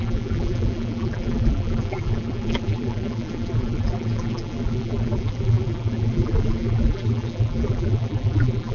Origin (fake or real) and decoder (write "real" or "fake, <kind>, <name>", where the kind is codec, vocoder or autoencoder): fake, vocoder, BigVGAN v2